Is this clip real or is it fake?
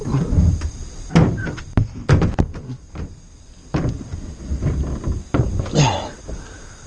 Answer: real